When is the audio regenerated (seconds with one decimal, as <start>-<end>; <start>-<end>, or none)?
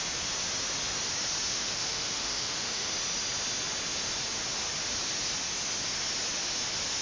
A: 1.5-2.9